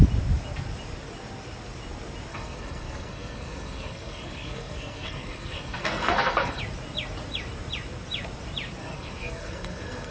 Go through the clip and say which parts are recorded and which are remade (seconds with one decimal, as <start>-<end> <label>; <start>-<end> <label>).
0.0-2.3 recorded; 2.3-6.6 remade; 6.6-8.8 recorded; 8.8-10.1 remade